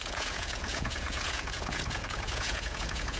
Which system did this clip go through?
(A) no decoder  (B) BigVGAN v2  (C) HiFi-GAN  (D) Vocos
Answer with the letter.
D